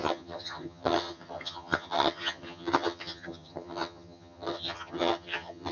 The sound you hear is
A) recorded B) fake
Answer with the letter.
B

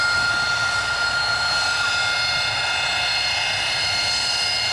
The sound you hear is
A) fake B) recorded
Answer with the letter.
B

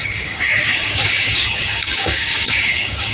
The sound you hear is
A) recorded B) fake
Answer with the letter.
B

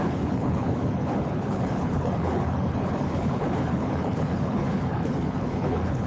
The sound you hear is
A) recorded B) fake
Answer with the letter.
B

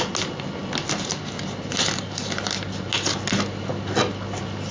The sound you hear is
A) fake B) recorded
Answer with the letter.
B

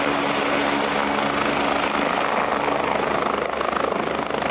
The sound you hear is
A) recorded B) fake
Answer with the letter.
A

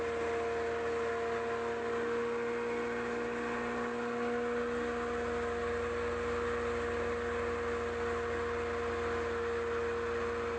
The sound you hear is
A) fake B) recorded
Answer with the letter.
B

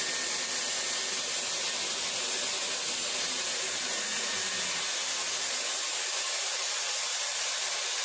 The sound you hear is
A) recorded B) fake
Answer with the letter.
A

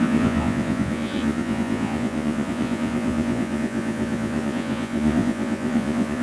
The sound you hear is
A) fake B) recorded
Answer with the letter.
A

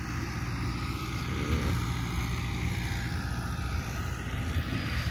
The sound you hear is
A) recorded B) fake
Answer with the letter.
B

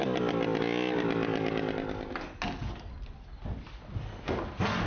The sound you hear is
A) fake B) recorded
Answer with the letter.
B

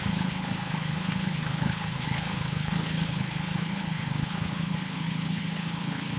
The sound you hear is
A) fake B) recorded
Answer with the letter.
A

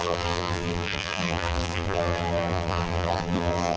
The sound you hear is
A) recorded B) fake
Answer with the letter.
B